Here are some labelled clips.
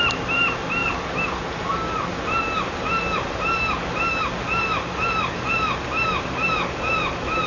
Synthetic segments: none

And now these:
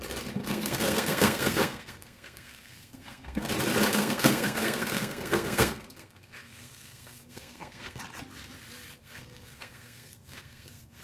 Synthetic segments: 0.4-3.5 (codec, SNAC); 3.9-8.0; 9.0-11.0

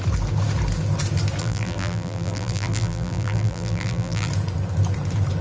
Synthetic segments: 1.4-4.3 (vocoder, BigVGAN v2)

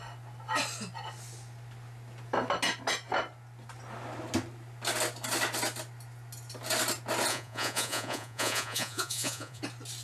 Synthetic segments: 7.3-9.6 (vocoder, Vocos)

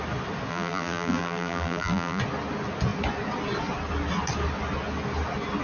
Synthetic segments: 0.5-2.2 (vocoder, BigVGAN v2)

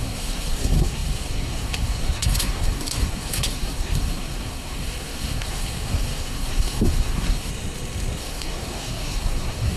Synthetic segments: 0.0-7.5 (codec, SNAC); 8.2-9.8

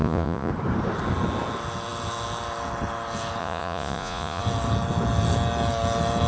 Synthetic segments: 0.0-0.5 (vocoder, Vocos); 3.4-4.4

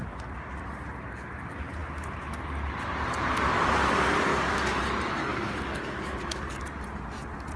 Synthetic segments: 4.3-4.8 (codec, DAC); 5.3-6.6